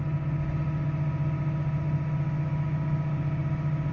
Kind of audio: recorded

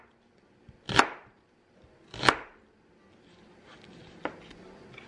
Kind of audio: recorded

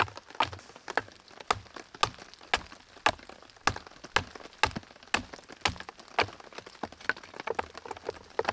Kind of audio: recorded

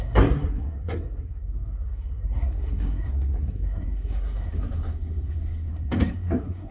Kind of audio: remade